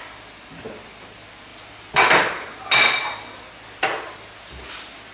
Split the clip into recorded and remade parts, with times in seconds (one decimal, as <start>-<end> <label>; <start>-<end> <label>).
0.0-5.1 recorded